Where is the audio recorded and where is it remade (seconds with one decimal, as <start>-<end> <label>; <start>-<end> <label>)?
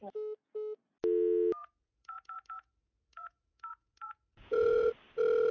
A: 0.0-1.6 recorded; 1.6-4.9 remade; 4.9-5.5 recorded